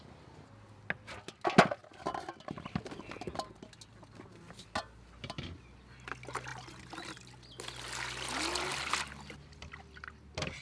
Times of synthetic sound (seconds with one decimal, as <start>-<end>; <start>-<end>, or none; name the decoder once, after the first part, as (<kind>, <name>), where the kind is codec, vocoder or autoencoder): none

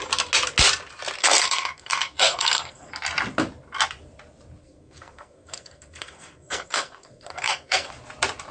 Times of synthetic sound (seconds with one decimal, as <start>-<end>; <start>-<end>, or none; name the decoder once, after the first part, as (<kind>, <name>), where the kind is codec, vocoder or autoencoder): 1.2-2.9 (codec, SNAC); 4.6-7.9

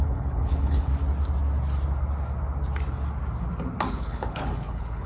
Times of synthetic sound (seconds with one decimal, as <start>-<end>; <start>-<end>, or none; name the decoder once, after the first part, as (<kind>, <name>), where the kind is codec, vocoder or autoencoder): 0.0-0.9 (codec, HILCodec); 3.9-5.1

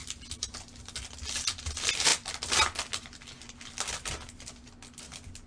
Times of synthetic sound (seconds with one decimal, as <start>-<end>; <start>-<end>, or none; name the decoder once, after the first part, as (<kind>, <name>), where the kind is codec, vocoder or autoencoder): none